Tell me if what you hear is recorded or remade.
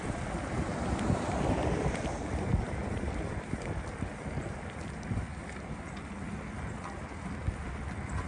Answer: remade